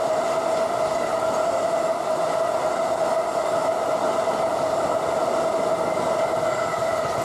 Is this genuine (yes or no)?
yes